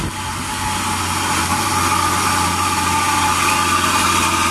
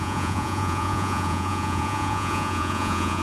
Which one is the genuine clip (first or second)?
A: first